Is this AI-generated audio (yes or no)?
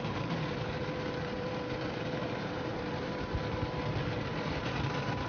yes